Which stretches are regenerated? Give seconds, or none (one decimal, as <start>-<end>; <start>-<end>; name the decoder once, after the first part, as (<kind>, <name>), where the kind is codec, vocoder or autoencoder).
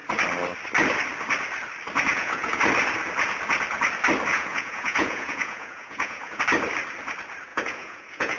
2.1-2.6 (vocoder, Vocos); 4.3-6.4; 7.5-8.4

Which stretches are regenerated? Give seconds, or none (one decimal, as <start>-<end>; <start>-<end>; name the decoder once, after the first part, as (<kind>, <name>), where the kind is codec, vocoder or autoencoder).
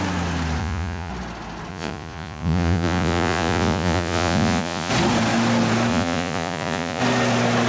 0.6-1.1 (vocoder, Vocos); 1.7-4.9; 5.9-7.0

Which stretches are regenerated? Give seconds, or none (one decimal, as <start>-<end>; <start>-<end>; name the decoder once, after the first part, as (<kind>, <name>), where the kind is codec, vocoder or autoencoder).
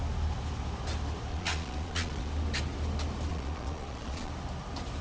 1.3-2.3 (vocoder, Vocos); 3.3-4.3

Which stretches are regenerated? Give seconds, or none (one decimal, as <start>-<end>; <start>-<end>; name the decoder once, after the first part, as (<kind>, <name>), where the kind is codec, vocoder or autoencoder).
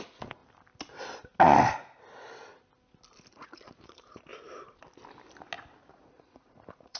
0.0-0.4 (vocoder, Vocos); 3.3-4.3; 5.9-7.0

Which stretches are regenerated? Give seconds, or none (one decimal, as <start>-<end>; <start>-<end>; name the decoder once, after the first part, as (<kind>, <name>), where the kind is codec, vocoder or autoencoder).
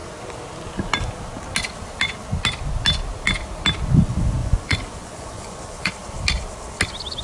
4.4-5.9 (vocoder, Vocos)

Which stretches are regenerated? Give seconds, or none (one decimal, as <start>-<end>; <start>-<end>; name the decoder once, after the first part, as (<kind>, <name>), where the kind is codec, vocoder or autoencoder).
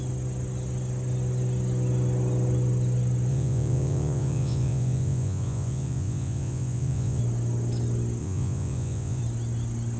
3.3-7.2 (vocoder, Vocos); 8.2-9.2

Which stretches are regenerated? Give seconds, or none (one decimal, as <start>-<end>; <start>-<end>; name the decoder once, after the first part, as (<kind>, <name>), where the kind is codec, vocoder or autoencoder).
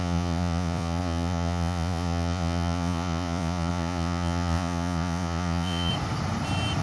0.0-5.9 (vocoder, Vocos)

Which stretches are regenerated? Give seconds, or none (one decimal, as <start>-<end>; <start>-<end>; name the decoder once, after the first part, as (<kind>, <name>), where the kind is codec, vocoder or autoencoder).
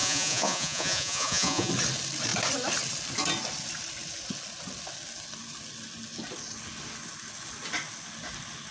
0.0-1.7 (vocoder, Vocos)